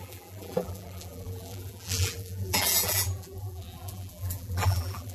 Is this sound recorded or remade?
remade